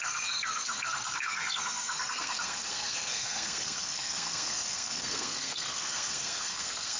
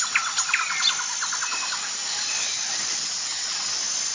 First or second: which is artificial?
first